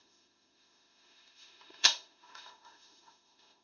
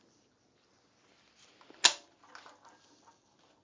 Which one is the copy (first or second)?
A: first